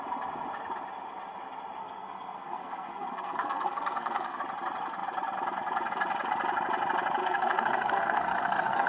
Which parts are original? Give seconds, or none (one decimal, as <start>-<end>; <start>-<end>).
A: 0.0-1.8; 4.4-7.2